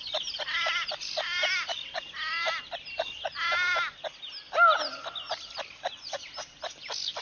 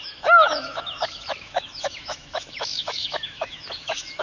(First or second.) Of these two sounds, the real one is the first